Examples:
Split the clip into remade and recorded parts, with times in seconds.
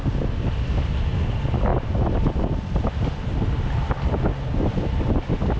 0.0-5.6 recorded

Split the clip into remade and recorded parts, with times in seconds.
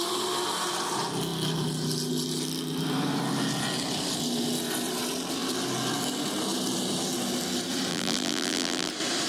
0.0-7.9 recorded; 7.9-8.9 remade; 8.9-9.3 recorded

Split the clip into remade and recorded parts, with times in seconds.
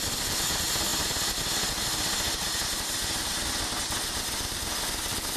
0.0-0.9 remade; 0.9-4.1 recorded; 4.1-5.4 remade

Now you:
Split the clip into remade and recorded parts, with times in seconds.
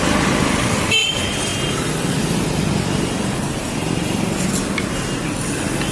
0.0-1.0 recorded; 1.0-4.5 remade; 4.5-5.9 recorded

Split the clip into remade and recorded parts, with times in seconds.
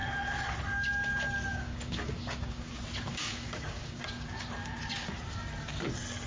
0.0-1.5 recorded; 1.5-2.7 remade; 2.7-3.1 recorded; 3.1-4.5 remade; 4.5-6.3 recorded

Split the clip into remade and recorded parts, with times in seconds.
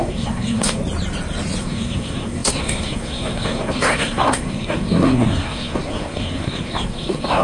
0.0-0.8 remade; 0.8-1.6 recorded; 1.6-7.4 remade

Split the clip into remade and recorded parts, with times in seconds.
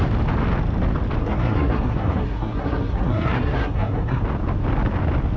0.0-1.2 recorded; 1.2-4.2 remade; 4.2-5.4 recorded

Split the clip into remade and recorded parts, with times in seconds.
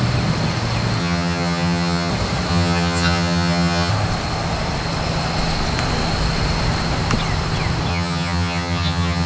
0.0-1.0 recorded; 1.0-2.1 remade; 2.1-2.5 recorded; 2.5-3.9 remade; 3.9-7.9 recorded; 7.9-9.3 remade